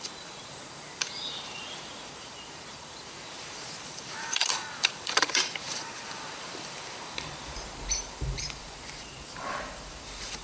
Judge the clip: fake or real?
fake